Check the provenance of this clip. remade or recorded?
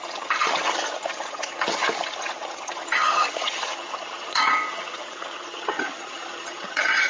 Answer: remade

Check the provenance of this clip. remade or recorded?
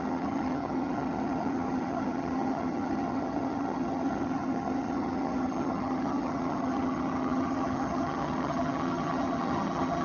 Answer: remade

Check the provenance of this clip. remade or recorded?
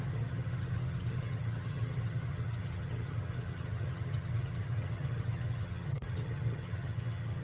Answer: remade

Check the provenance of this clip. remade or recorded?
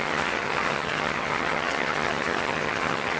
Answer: remade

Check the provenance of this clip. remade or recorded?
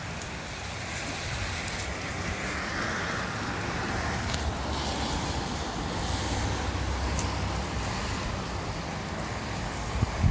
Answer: recorded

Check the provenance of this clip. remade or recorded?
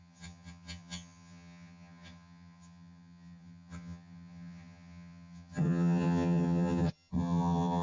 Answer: remade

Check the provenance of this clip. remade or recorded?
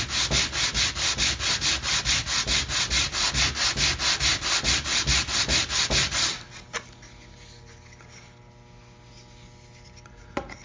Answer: recorded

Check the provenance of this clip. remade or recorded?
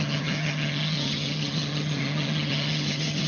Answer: remade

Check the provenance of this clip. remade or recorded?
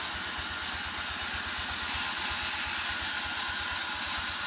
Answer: recorded